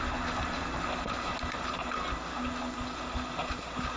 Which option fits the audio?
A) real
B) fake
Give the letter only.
A